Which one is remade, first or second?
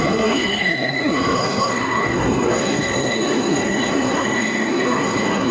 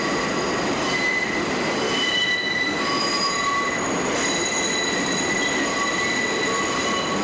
first